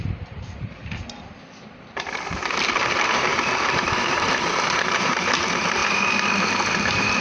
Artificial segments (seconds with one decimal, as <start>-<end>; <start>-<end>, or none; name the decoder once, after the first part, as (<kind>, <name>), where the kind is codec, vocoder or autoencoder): 0.0-0.8 (vocoder, BigVGAN v2); 1.6-5.8; 6.4-7.2